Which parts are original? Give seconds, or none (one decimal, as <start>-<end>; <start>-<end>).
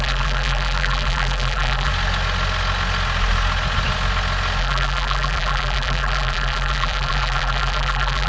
1.9-4.6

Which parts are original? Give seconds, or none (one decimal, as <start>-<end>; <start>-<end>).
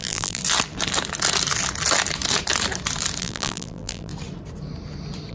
0.4-3.2; 4.1-5.3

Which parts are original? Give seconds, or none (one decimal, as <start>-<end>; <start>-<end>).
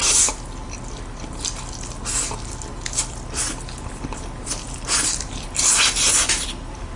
0.0-3.4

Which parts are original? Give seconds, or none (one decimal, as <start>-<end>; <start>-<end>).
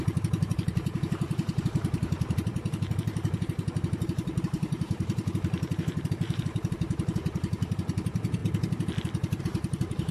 8.4-9.4